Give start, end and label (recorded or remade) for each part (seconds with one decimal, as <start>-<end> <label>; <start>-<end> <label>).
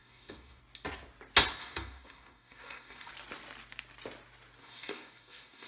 0.0-0.6 remade; 0.6-1.6 recorded; 1.6-3.1 remade; 3.1-4.6 recorded; 4.6-5.7 remade